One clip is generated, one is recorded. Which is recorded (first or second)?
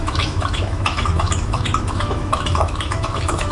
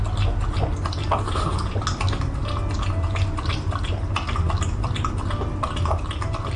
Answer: second